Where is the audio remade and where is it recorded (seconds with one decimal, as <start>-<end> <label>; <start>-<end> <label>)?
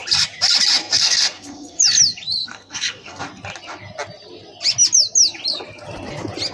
0.0-0.8 recorded; 0.8-1.8 remade; 1.8-2.4 recorded; 2.4-3.2 remade; 3.2-6.5 recorded